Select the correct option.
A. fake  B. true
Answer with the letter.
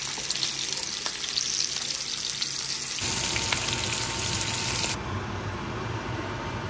B